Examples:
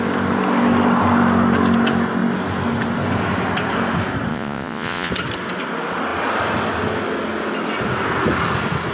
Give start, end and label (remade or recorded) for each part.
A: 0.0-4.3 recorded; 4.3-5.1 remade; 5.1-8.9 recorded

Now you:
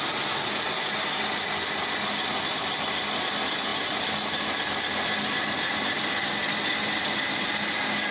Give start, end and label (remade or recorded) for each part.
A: 0.0-3.7 recorded; 3.7-4.8 remade; 4.8-8.1 recorded

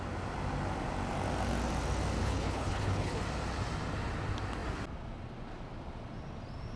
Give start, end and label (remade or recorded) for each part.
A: 0.0-2.2 recorded; 2.2-3.2 remade; 3.2-6.8 recorded

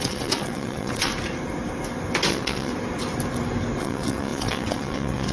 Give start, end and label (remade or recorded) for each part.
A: 0.0-1.1 remade; 1.1-2.3 recorded; 2.3-2.7 remade; 2.7-3.8 recorded; 3.8-5.3 remade

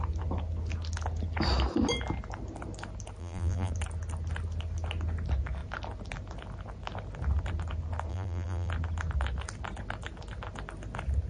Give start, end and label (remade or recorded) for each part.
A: 0.0-3.2 recorded; 3.2-3.7 remade; 3.7-8.1 recorded; 8.1-8.7 remade; 8.7-11.3 recorded

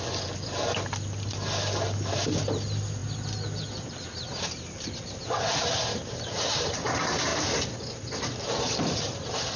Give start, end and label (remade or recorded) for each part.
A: 0.0-9.6 recorded

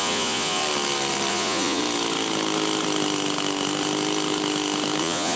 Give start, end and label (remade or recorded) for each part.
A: 0.0-0.6 remade; 0.6-1.3 recorded; 1.3-1.8 remade; 1.8-5.0 recorded; 5.0-5.4 remade

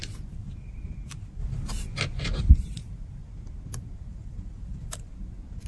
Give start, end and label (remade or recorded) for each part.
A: 0.0-4.1 recorded; 4.1-5.1 remade; 5.1-5.7 recorded